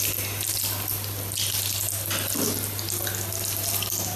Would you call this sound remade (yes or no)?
no